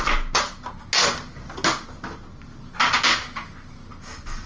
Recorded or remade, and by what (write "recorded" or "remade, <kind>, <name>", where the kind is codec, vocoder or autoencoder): recorded